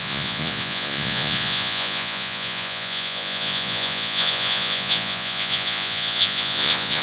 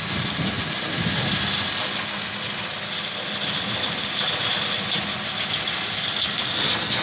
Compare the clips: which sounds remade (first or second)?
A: first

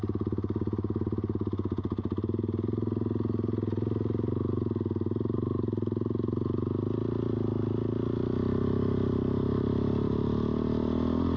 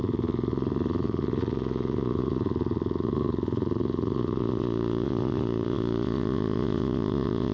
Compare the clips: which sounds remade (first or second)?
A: second